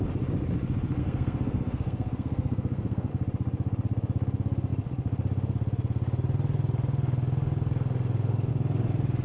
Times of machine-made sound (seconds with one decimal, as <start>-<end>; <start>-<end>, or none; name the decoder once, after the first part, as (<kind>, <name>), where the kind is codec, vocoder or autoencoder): 1.0-3.1 (codec, SNAC)